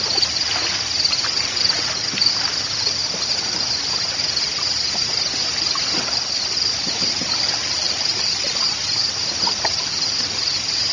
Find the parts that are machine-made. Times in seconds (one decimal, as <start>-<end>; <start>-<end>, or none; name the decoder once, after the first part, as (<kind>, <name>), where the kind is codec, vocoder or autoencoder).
7.6-8.2 (vocoder, BigVGAN v2)